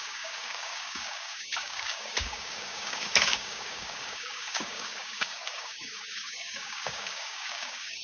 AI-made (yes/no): yes